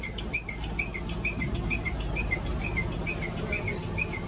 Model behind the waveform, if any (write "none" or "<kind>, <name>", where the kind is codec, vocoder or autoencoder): none